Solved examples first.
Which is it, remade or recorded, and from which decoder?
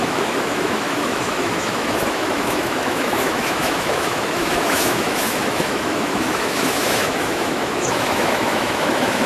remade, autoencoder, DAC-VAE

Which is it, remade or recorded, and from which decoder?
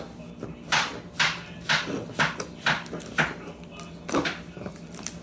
recorded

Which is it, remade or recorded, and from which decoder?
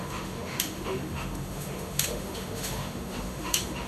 remade, autoencoder, DAC-VAE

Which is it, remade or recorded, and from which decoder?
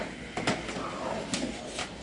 recorded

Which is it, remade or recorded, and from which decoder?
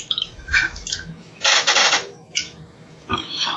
remade, autoencoder, DAC-VAE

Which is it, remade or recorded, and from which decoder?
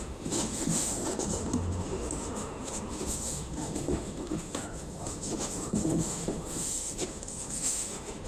remade, autoencoder, DAC-VAE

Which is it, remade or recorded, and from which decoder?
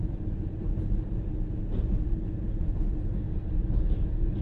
recorded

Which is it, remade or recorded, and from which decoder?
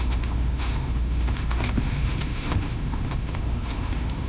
remade, autoencoder, DAC-VAE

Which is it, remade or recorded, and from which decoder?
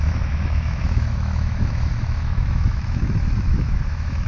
remade, autoencoder, DAC-VAE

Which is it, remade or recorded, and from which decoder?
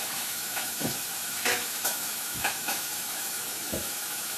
remade, autoencoder, DAC-VAE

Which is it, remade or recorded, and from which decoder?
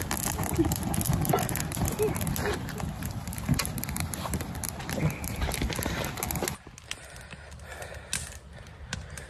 recorded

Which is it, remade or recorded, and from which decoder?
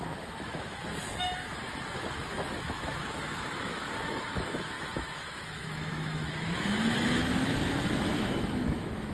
remade, autoencoder, DAC-VAE